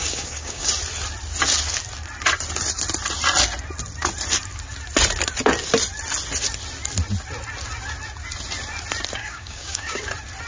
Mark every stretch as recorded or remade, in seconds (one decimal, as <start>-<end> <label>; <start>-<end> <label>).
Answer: 0.0-0.7 remade; 0.7-9.2 recorded; 9.2-10.0 remade; 10.0-10.5 recorded